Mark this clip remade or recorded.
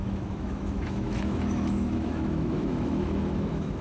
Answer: remade